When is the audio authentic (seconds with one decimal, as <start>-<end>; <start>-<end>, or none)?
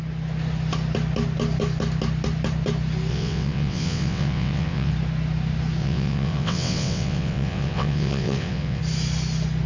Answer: 0.0-3.1; 4.9-5.8; 8.8-9.7